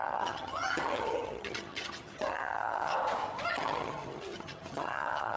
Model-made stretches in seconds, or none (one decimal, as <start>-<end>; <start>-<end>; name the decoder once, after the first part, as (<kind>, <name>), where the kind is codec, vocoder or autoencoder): 0.0-2.9 (vocoder, HiFi-GAN); 3.5-5.4